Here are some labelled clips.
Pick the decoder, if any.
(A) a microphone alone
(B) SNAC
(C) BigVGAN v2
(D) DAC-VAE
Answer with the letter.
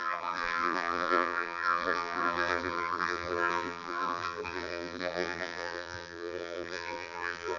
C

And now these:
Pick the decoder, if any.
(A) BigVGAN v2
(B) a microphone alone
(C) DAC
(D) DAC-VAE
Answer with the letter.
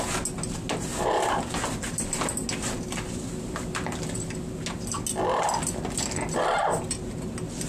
B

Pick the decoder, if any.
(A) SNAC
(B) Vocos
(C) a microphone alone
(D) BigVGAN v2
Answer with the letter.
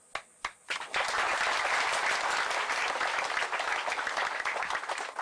C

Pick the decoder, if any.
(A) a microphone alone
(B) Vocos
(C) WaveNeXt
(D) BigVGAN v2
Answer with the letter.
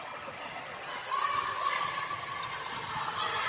A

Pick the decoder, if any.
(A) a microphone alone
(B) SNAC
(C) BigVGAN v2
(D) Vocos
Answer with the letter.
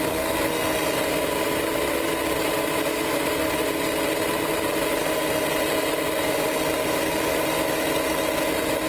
A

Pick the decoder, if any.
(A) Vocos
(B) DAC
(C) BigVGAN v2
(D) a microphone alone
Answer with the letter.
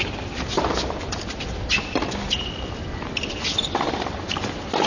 D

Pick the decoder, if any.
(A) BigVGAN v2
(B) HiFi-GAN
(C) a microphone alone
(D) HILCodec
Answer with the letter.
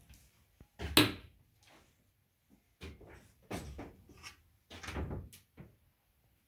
C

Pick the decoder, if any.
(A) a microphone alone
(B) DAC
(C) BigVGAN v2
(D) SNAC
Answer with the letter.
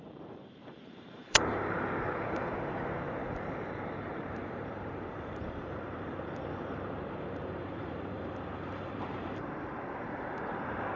C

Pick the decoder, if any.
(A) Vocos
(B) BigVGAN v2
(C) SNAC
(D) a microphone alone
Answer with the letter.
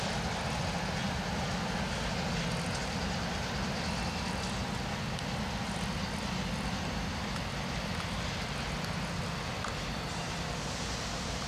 D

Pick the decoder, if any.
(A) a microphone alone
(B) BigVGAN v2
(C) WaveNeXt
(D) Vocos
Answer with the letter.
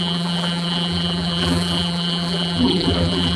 B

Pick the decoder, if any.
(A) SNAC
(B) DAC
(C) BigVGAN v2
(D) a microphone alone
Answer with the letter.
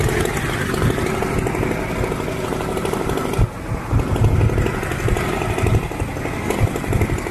D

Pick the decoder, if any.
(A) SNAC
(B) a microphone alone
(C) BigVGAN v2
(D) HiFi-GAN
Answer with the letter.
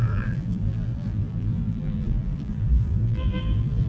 C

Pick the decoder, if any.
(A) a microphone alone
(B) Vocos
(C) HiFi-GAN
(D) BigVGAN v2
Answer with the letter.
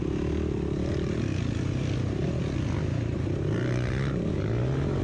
A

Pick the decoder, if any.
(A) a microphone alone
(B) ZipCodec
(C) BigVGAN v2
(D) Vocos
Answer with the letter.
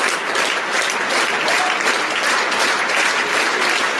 C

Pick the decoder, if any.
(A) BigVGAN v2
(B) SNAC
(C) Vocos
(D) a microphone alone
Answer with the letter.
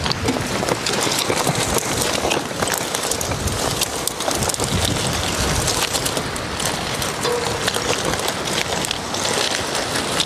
D